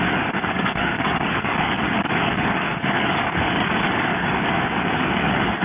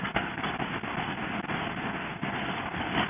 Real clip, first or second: second